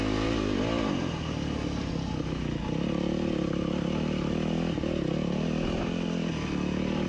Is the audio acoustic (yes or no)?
yes